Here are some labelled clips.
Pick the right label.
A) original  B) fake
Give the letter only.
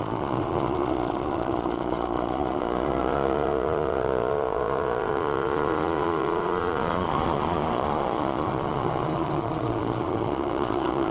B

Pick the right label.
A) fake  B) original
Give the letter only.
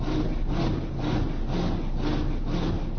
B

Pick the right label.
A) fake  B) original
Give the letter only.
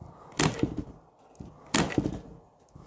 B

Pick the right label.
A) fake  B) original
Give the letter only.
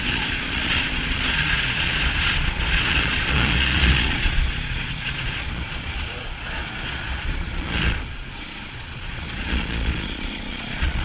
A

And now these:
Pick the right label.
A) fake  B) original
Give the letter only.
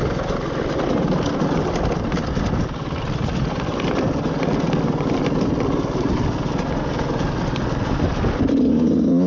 B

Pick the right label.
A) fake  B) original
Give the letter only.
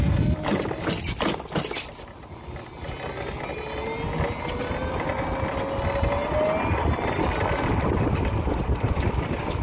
B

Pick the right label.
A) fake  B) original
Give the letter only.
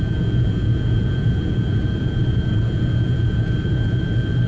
A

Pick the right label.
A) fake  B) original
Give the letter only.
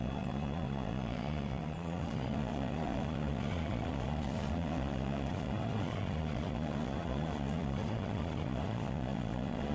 A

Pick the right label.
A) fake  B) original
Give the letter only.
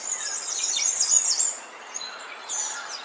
A